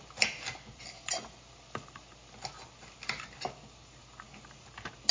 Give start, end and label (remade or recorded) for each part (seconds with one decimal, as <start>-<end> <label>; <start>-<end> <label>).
0.0-5.1 recorded